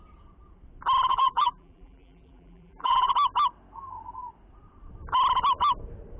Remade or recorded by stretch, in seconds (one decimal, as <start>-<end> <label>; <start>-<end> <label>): 0.0-1.1 recorded; 1.1-3.1 remade; 3.1-6.2 recorded

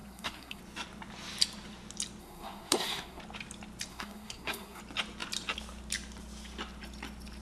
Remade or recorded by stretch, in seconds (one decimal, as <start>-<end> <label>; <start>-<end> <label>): 0.0-0.6 remade; 0.6-2.2 recorded; 2.2-3.2 remade; 3.2-3.9 recorded; 3.9-4.8 remade; 4.8-7.4 recorded